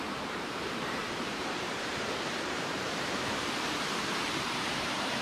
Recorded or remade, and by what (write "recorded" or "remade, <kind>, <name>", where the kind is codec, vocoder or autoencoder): remade, vocoder, BigVGAN v2